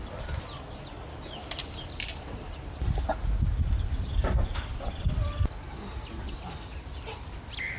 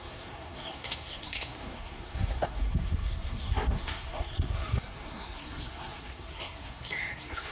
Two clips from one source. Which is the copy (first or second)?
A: second